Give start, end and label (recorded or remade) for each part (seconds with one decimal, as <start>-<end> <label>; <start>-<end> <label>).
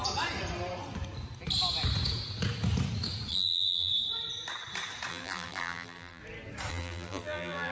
0.0-3.3 recorded; 3.3-3.9 remade; 3.9-5.1 recorded; 5.1-6.2 remade; 6.2-6.7 recorded; 6.7-7.7 remade